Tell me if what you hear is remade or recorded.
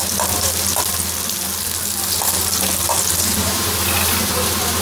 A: recorded